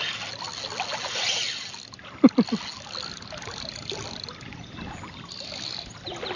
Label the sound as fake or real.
real